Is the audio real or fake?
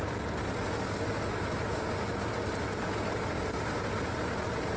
fake